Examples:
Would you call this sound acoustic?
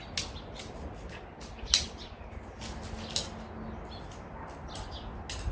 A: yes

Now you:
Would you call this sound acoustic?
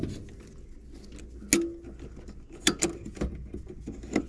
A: yes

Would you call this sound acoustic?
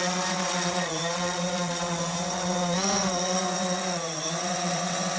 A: no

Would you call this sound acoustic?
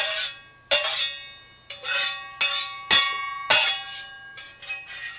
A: yes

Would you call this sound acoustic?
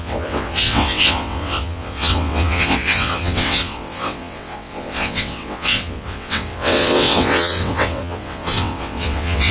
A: no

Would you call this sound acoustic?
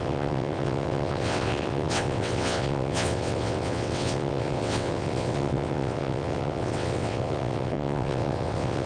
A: no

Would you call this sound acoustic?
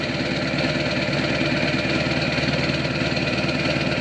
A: yes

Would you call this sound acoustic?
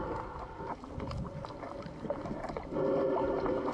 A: yes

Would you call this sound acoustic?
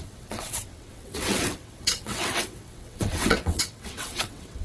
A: no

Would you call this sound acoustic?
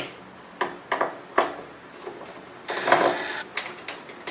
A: yes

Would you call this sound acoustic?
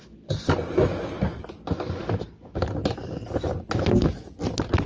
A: yes